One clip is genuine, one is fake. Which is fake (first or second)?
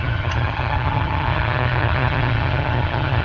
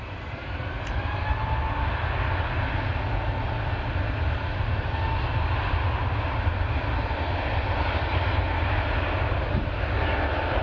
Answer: first